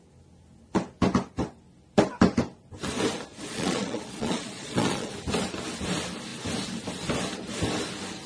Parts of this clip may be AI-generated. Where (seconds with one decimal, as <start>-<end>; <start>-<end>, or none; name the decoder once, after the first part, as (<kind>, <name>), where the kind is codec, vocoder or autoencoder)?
3.3-5.1 (vocoder, Vocos)